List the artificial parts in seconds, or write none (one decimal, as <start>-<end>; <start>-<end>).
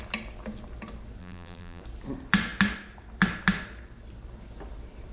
1.2-1.8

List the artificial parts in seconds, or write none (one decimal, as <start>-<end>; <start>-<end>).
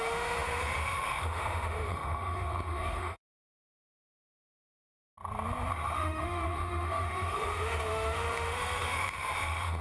0.0-5.1; 5.7-9.8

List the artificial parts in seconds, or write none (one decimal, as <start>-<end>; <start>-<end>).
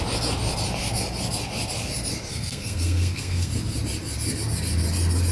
2.3-3.5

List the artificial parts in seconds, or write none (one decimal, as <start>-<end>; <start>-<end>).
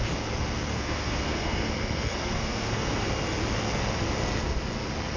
0.7-1.7; 2.2-3.0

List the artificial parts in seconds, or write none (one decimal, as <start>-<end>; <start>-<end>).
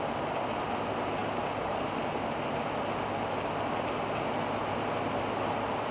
none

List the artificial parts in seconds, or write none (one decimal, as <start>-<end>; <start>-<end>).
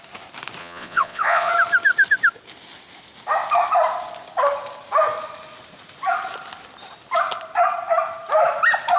0.6-1.5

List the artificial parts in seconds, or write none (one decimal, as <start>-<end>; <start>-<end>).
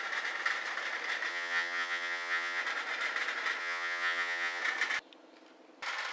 1.3-2.6; 3.6-4.6